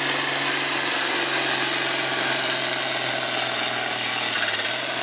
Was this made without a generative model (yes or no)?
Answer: yes